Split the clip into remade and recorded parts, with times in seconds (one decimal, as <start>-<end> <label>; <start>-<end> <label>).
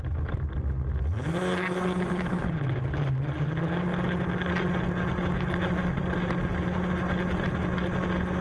0.0-8.4 recorded